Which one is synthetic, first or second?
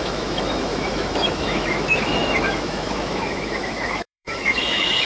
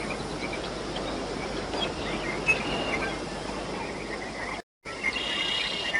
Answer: first